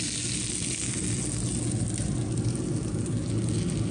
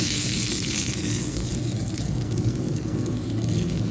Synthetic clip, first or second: second